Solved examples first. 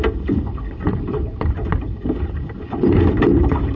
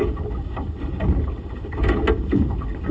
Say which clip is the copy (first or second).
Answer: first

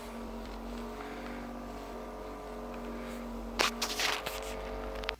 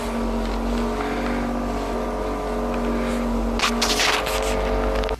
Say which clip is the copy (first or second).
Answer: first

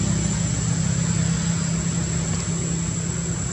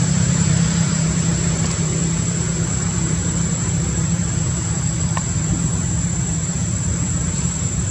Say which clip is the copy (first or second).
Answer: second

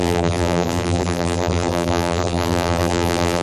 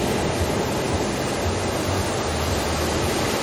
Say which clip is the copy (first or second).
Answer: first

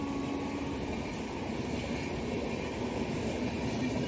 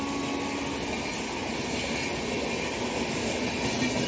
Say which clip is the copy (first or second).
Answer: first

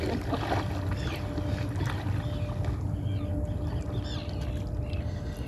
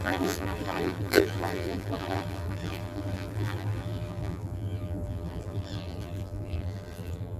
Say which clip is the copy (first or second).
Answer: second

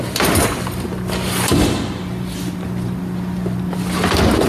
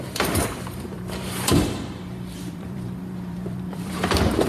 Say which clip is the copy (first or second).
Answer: second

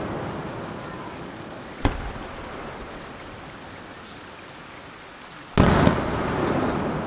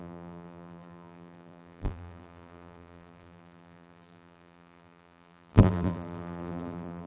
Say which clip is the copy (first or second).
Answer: second